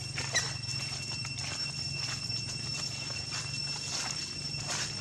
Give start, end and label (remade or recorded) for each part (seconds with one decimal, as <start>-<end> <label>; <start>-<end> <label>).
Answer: 0.0-5.0 recorded